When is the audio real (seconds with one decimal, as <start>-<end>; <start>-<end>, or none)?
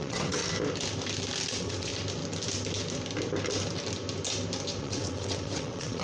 0.4-1.5; 1.9-4.8